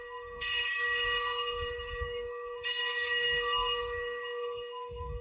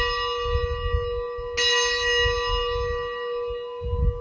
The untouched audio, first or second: second